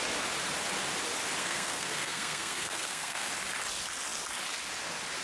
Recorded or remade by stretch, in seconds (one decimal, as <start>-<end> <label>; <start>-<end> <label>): 0.0-1.4 recorded; 1.4-3.3 remade; 3.3-5.2 recorded